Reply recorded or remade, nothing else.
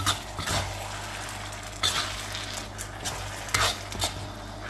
recorded